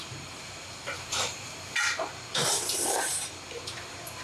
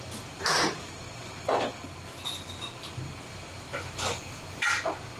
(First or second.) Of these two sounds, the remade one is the first